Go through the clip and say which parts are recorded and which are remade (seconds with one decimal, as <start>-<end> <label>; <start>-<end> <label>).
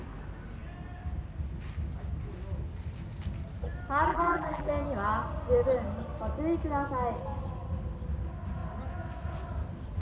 0.0-4.1 recorded; 4.1-4.7 remade; 4.7-10.0 recorded